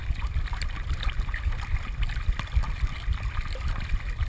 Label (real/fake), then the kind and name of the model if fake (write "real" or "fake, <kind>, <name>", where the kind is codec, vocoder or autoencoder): real